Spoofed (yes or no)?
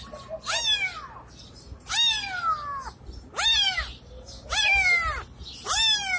no